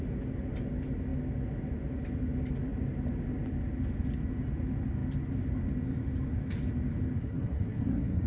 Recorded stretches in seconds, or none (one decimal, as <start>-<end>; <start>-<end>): 0.0-7.2

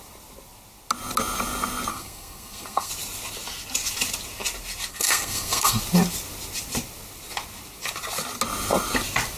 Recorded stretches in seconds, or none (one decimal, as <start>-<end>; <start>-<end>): 0.0-1.9; 2.9-4.9; 5.8-9.4

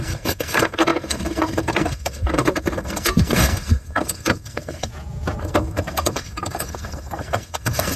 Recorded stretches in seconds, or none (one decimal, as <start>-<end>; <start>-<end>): 4.9-5.4

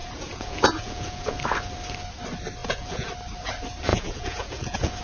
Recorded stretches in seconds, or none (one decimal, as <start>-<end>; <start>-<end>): 1.3-2.6; 3.1-3.9

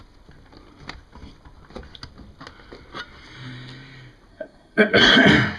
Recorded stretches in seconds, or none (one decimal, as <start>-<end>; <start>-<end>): 0.0-4.3; 5.1-5.6